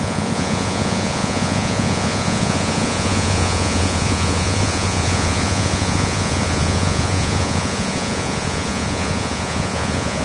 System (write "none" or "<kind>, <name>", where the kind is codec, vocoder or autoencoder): vocoder, Vocos